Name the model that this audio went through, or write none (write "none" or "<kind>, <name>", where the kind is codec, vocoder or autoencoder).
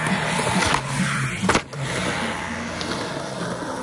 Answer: none